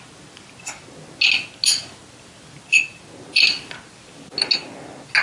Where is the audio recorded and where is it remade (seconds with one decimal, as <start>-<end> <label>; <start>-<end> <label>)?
0.0-5.2 recorded